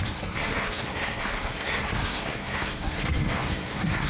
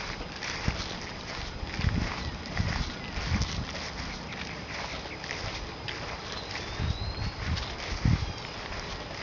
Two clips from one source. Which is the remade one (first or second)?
first